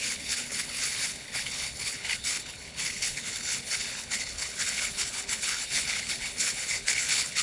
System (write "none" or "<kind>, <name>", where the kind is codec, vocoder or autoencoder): codec, HILCodec